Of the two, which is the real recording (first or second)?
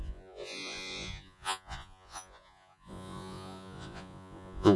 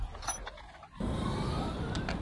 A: second